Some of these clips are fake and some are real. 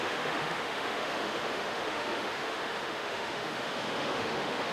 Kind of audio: fake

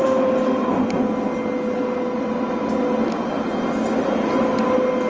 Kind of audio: real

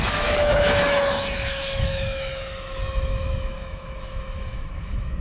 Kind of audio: fake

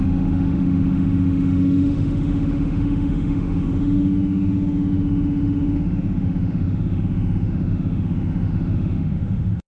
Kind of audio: fake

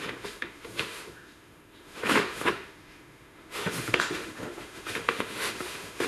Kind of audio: fake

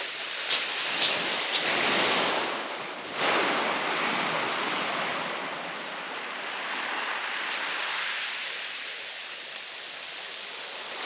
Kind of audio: real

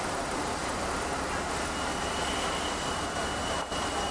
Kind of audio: real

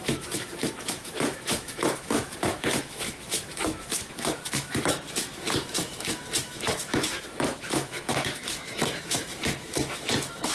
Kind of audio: fake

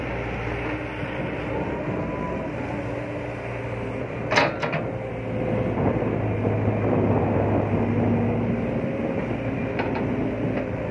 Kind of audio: real